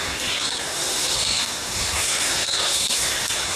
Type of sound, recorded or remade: remade